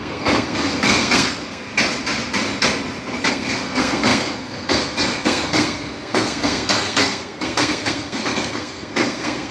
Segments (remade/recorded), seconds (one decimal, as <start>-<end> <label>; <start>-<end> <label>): 0.0-1.7 remade; 1.7-3.3 recorded; 3.3-9.5 remade